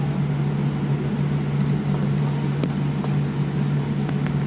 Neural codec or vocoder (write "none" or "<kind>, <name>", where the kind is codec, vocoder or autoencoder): none